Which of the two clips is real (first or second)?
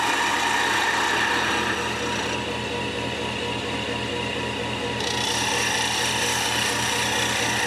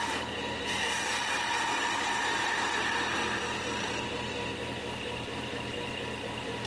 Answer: first